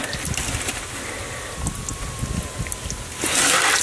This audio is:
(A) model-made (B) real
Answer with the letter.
B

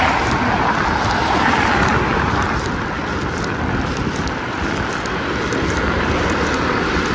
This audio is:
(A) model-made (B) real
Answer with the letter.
B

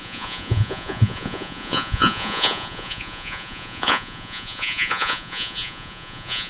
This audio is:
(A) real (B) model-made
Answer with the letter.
B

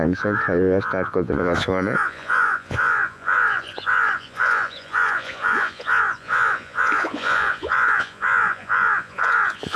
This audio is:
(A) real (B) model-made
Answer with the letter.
B